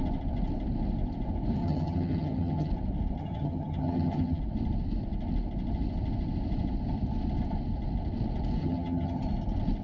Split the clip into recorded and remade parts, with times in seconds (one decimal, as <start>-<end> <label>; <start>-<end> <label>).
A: 0.0-1.6 recorded; 1.6-2.7 remade; 2.7-3.2 recorded; 3.2-4.4 remade; 4.4-8.6 recorded; 8.6-9.2 remade; 9.2-9.8 recorded